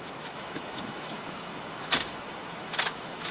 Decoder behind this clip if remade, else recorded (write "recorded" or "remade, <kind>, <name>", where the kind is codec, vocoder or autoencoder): remade, autoencoder, DAC-VAE